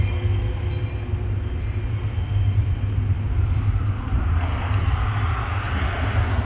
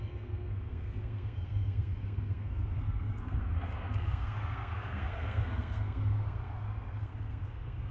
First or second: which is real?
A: first